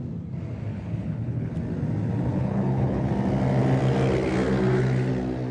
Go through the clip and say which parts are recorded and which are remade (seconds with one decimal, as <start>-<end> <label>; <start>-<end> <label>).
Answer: 0.0-0.7 recorded; 0.7-1.5 remade; 1.5-2.3 recorded; 2.3-3.1 remade; 3.1-5.5 recorded